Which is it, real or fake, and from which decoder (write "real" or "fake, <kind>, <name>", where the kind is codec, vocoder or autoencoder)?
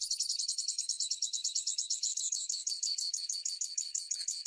fake, codec, HILCodec